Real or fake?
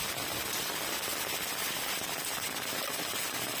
real